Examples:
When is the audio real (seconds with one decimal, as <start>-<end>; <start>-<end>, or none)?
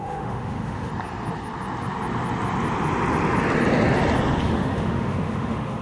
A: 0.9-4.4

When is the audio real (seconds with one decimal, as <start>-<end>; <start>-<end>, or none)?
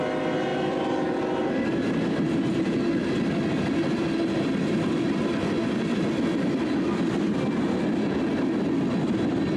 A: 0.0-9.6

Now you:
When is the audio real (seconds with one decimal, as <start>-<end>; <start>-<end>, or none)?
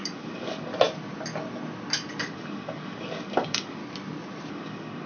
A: 0.7-2.2; 3.8-4.5